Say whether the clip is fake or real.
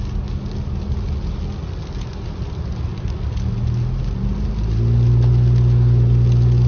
real